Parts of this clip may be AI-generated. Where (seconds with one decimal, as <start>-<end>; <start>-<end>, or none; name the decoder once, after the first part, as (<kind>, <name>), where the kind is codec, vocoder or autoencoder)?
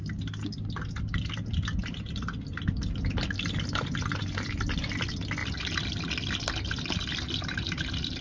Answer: none